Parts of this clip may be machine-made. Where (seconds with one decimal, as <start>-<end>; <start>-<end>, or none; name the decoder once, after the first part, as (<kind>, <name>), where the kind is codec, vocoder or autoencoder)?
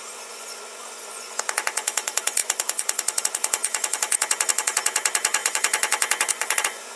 0.0-7.0 (vocoder, Vocos)